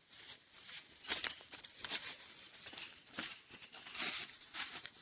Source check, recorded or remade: remade